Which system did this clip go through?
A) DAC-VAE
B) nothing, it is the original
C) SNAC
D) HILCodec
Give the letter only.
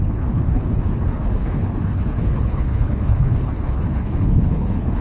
D